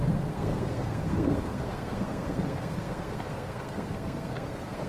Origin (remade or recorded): remade